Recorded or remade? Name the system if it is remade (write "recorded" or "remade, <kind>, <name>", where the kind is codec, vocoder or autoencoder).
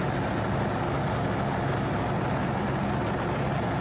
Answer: recorded